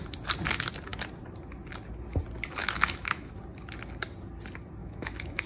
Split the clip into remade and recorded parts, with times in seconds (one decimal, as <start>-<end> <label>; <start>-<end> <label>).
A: 0.0-2.6 recorded; 2.6-3.3 remade; 3.3-4.8 recorded; 4.8-5.5 remade

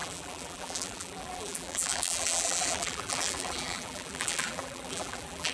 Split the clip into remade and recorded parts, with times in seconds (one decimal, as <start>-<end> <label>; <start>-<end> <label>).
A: 0.0-5.5 remade

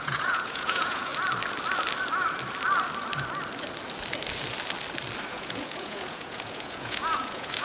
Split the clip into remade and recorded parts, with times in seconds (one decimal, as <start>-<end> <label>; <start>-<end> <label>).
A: 0.0-1.1 remade; 1.1-5.3 recorded; 5.3-7.6 remade

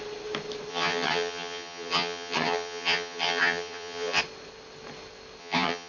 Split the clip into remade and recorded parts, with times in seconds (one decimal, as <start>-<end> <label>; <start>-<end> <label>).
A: 0.0-0.7 recorded; 0.7-4.2 remade; 4.2-5.4 recorded; 5.4-5.9 remade